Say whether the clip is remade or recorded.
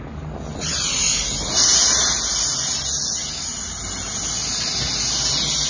recorded